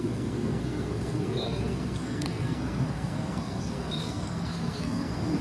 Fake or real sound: fake